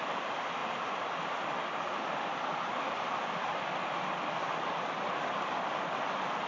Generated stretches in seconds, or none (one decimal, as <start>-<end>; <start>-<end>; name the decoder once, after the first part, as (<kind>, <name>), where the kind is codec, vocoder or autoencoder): none